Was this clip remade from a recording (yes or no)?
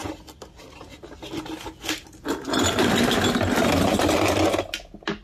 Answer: no